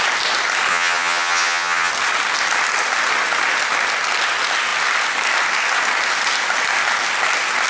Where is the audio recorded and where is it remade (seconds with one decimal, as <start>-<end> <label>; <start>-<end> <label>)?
0.0-0.7 recorded; 0.7-1.9 remade; 1.9-7.7 recorded